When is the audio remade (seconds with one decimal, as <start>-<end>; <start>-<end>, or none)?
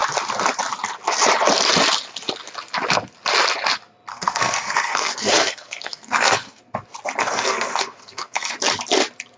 4.1-6.6; 7.2-8.5